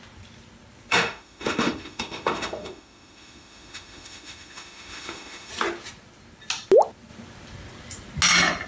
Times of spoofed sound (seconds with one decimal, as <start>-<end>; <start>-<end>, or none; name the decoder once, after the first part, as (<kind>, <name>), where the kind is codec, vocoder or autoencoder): 0.9-5.5 (autoencoder, DAC-VAE)